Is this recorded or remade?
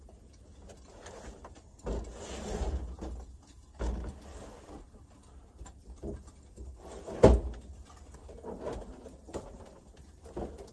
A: recorded